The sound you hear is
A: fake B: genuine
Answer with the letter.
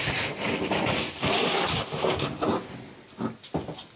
B